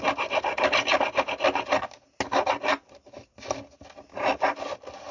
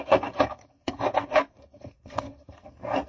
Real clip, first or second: first